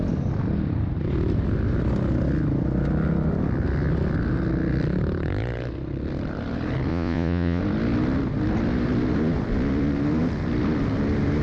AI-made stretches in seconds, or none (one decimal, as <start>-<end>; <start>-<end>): 6.9-7.6